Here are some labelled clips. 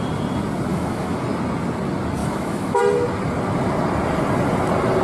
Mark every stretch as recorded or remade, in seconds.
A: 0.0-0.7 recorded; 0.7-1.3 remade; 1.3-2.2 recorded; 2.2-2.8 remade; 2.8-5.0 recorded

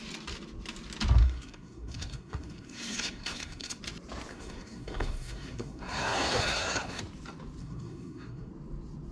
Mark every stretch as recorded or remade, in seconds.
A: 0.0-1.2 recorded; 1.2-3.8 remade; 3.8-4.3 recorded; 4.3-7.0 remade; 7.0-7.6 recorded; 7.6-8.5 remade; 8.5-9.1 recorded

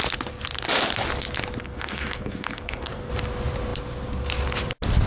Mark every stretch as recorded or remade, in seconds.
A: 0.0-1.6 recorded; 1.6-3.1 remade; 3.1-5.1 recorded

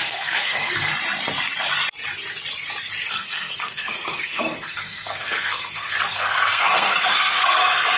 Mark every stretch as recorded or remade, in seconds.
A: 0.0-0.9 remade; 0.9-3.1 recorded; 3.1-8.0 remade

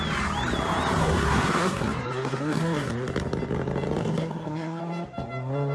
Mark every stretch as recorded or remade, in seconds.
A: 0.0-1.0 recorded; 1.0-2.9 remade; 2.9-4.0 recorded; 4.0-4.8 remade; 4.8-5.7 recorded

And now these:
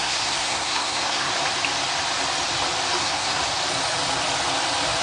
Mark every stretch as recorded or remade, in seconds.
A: 0.0-1.3 remade; 1.3-3.0 recorded; 3.0-3.4 remade; 3.4-5.0 recorded

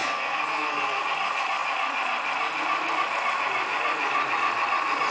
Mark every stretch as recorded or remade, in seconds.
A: 0.0-1.0 remade; 1.0-5.1 recorded